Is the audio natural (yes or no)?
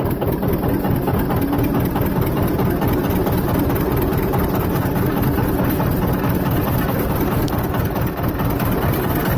yes